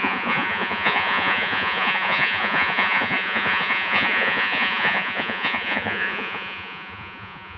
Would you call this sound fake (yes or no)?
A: yes